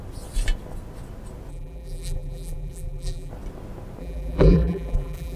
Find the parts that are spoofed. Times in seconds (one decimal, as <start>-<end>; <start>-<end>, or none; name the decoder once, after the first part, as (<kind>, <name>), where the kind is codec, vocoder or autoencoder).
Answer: 1.5-3.3 (vocoder, BigVGAN v2); 4.0-5.4